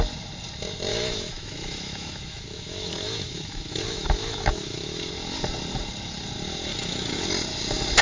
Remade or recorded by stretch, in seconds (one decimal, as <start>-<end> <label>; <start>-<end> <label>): 0.0-0.9 recorded; 0.9-5.1 remade; 5.1-6.7 recorded; 6.7-7.3 remade; 7.3-8.0 recorded